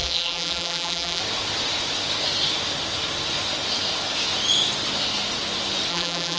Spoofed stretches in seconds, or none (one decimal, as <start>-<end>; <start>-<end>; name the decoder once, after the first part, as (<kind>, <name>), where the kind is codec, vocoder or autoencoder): 0.0-1.2 (vocoder, BigVGAN v2); 5.9-6.4

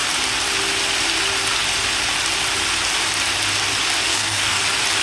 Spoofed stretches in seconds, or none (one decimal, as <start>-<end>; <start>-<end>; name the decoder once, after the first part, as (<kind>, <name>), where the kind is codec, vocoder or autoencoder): 4.1-4.6 (codec, DAC)

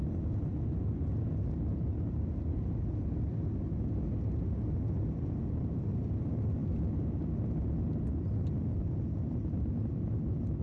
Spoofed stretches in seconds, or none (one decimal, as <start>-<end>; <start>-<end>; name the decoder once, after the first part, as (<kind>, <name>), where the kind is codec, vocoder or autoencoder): none

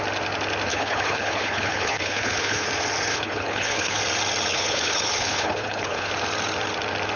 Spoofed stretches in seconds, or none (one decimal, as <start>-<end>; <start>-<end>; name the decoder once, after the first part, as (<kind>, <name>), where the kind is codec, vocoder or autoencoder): 0.7-2.7 (codec, HILCodec); 3.1-4.0; 4.5-6.1

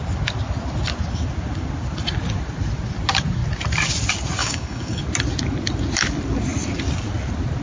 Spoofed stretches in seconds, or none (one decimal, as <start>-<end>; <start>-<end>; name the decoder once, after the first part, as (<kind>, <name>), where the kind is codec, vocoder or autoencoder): 4.4-5.0 (codec, DAC)

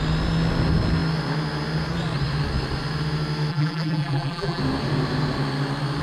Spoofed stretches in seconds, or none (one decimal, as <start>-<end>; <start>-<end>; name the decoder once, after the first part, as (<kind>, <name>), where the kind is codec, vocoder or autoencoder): 3.5-4.6 (vocoder, BigVGAN v2)